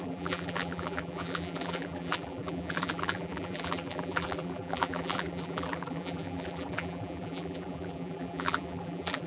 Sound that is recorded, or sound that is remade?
remade